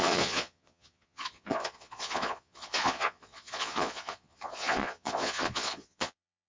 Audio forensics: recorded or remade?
remade